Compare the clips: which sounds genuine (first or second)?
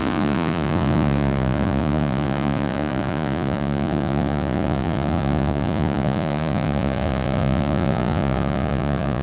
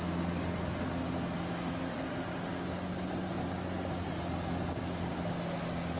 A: second